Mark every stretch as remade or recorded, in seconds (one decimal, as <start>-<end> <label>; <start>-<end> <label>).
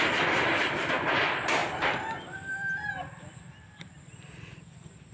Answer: 0.0-5.1 remade